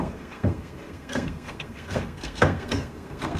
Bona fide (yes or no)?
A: no